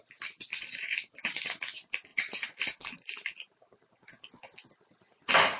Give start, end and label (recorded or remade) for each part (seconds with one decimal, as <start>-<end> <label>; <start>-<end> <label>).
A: 0.0-0.5 recorded; 0.5-1.6 remade; 1.6-2.1 recorded; 2.1-4.7 remade; 4.7-5.6 recorded